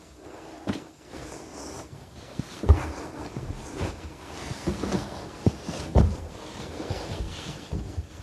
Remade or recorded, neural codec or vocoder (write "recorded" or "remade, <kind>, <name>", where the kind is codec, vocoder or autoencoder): remade, codec, SNAC